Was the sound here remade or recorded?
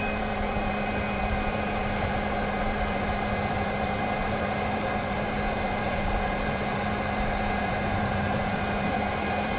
remade